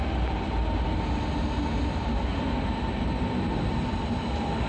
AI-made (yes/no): no